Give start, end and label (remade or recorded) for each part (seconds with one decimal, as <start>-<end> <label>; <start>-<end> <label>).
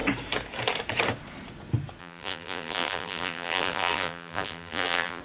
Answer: 0.0-2.0 recorded; 2.0-5.2 remade